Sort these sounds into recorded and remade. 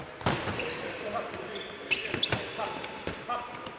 recorded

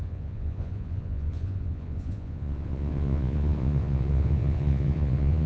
remade